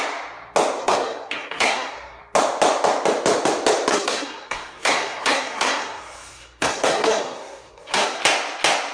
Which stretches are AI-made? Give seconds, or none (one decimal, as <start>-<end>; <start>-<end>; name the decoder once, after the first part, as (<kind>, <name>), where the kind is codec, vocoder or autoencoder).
0.8-2.2 (codec, SNAC); 3.9-8.2